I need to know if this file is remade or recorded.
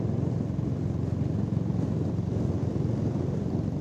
recorded